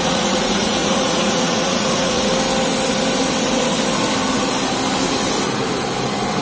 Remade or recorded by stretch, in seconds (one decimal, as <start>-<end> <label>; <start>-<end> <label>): 0.0-2.3 remade; 2.3-6.4 recorded